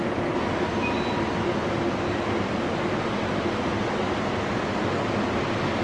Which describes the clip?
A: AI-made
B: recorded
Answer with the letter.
B